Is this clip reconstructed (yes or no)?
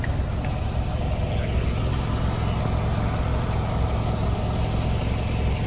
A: no